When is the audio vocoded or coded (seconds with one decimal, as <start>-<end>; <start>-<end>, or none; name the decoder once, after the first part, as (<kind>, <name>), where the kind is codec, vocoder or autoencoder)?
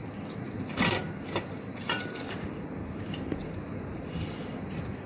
0.0-5.1 (vocoder, BigVGAN v2)